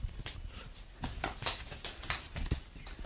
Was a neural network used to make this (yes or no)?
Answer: no